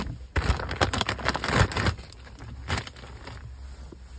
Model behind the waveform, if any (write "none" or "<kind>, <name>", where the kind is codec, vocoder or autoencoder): none